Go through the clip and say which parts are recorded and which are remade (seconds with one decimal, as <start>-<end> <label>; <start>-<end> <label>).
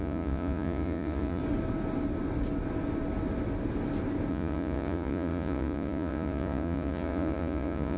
0.0-1.4 remade; 1.4-4.3 recorded; 4.3-8.0 remade